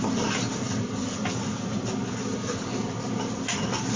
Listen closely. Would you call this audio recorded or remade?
recorded